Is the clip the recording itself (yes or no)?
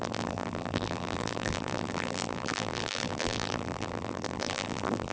no